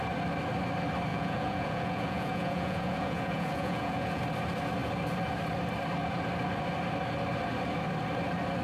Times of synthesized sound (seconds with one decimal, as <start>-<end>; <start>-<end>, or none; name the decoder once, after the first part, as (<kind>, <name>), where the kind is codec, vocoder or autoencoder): 1.1-4.2 (vocoder, Vocos)